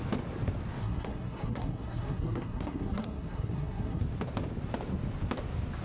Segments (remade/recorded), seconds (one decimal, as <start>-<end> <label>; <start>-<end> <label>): 0.0-0.8 recorded; 0.8-4.0 remade; 4.0-5.8 recorded